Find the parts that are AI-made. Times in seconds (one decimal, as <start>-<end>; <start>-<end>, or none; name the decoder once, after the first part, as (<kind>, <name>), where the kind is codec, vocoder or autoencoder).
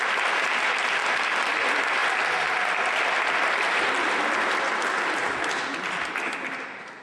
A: none